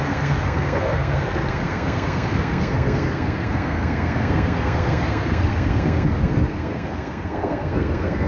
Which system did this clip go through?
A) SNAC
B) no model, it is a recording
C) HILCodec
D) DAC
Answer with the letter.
A